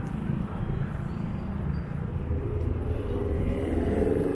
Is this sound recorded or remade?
recorded